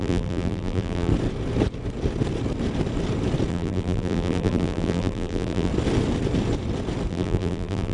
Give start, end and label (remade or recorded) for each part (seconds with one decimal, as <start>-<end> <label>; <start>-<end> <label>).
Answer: 0.0-1.1 remade; 1.1-3.5 recorded; 3.5-5.7 remade; 5.7-7.1 recorded; 7.1-7.9 remade